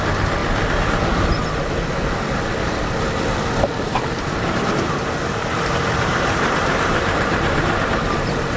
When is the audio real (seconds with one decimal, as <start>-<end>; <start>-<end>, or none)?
0.0-3.7